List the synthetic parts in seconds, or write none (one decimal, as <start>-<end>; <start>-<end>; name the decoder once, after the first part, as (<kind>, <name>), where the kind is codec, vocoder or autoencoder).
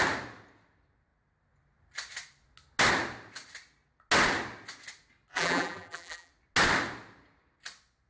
5.3-6.3 (vocoder, BigVGAN v2)